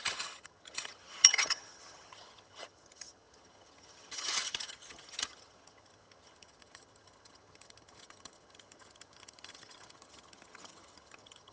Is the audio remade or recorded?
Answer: remade